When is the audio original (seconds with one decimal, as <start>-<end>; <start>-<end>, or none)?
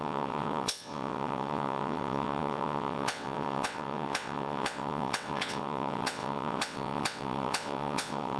none